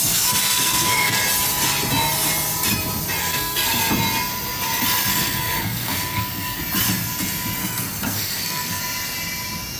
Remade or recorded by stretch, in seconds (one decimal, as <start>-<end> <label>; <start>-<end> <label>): 0.0-1.2 remade; 1.2-3.2 recorded; 3.2-3.9 remade; 3.9-5.1 recorded; 5.1-6.6 remade; 6.6-7.6 recorded; 7.6-8.8 remade; 8.8-9.8 recorded